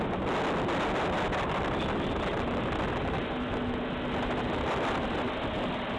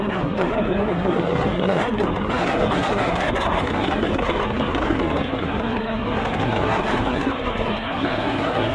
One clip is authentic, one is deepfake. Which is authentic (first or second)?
first